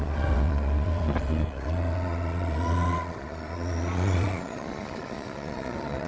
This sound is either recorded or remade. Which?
remade